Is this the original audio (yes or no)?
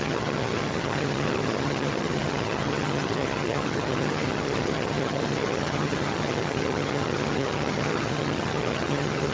no